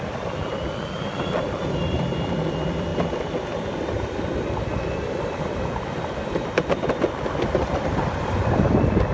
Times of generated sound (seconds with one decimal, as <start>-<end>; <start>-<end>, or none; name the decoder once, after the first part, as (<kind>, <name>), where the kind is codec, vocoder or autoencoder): 0.0-0.5 (vocoder, BigVGAN v2); 1.6-9.1